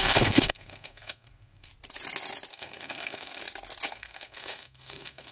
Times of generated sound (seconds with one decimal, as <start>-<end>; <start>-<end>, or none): 0.0-1.7; 2.5-3.4; 3.9-5.3

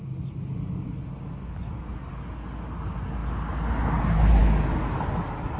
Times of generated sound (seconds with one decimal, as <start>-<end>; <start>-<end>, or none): 4.4-5.0